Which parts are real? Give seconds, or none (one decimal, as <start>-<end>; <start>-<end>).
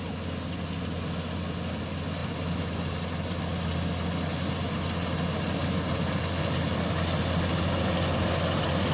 0.0-8.9